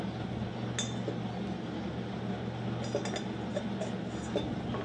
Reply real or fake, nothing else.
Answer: real